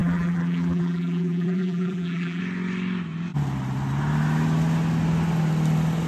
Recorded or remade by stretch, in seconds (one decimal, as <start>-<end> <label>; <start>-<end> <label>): 0.0-2.4 remade; 2.4-6.1 recorded